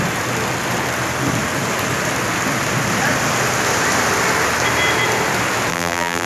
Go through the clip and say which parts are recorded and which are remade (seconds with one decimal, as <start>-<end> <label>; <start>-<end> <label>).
0.0-5.7 recorded; 5.7-6.3 remade